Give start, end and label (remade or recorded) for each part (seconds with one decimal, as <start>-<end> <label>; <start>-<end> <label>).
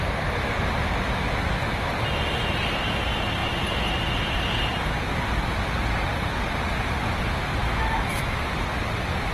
0.0-7.6 recorded; 7.6-8.4 remade; 8.4-9.3 recorded